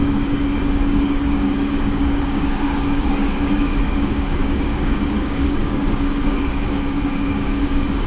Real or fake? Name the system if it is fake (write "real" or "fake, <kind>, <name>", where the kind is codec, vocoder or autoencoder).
fake, codec, DAC